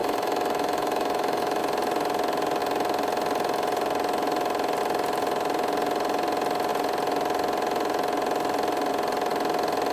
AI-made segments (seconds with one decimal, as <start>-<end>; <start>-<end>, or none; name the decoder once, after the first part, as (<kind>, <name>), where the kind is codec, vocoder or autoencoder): 0.0-1.6 (autoencoder, DAC-VAE)